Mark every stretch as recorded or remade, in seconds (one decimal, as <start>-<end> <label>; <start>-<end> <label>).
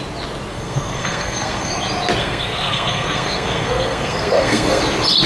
0.0-0.5 recorded; 0.5-1.7 remade; 1.7-2.2 recorded; 2.2-4.8 remade; 4.8-5.3 recorded